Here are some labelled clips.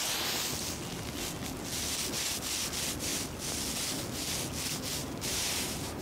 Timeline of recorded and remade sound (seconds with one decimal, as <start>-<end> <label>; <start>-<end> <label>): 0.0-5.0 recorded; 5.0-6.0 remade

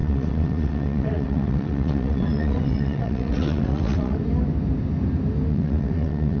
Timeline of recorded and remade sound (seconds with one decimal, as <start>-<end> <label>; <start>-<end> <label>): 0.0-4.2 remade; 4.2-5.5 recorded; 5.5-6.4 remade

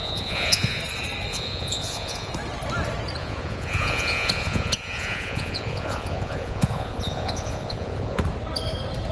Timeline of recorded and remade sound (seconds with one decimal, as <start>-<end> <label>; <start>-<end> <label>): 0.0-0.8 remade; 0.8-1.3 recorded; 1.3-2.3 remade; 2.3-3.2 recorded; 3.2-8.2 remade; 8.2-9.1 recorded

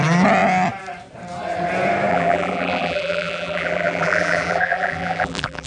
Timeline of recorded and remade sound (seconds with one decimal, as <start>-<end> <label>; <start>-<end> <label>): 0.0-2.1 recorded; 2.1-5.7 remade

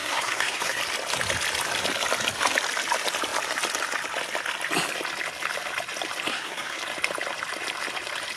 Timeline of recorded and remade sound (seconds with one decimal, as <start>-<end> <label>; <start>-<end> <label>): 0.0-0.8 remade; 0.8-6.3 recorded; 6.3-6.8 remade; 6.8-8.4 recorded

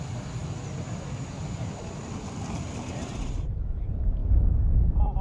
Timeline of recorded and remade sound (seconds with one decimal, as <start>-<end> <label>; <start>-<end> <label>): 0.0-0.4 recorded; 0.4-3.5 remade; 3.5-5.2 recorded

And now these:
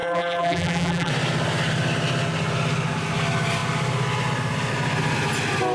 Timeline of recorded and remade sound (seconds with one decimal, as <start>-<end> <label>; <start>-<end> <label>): 0.0-1.1 remade; 1.1-5.7 recorded